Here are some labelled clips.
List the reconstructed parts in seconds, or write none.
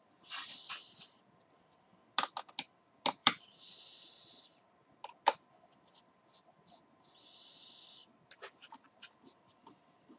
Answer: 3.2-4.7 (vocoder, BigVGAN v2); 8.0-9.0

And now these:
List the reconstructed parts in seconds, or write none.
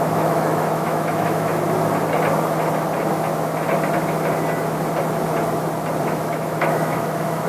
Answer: 0.0-1.5 (autoencoder, DAC-VAE); 6.0-7.5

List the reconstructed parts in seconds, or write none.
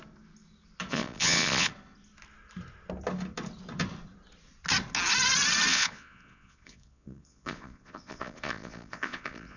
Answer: 0.9-1.7 (vocoder, Vocos); 5.7-9.6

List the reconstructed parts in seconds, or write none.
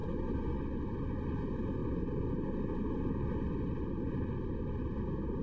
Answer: 0.0-0.6 (autoencoder, DAC-VAE)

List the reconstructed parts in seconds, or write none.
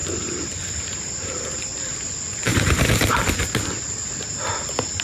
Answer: 0.0-1.4 (vocoder, BigVGAN v2); 2.5-3.0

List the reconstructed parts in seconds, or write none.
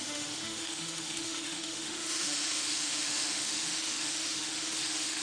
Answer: 0.0-5.2 (autoencoder, DAC-VAE)